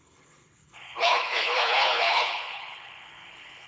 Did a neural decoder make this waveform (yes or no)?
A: yes